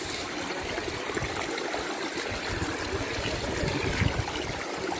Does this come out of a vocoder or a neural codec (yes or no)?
no